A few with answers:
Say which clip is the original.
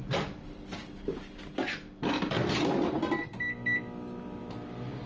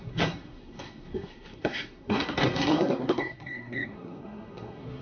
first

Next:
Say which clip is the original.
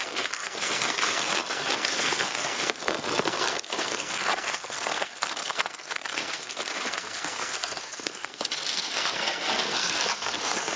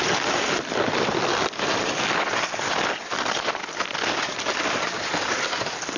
second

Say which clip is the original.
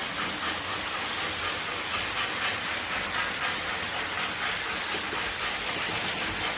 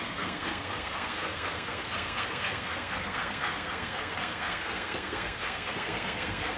first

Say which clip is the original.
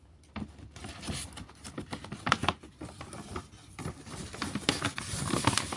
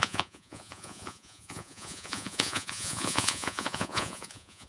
first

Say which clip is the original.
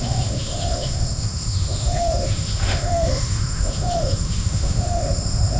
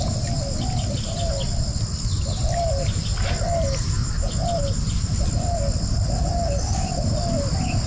second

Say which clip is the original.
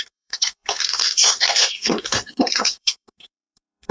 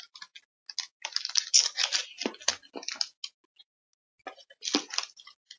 second